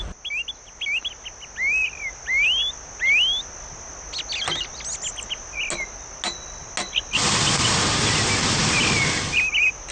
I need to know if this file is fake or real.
real